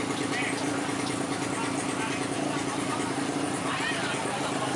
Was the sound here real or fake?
real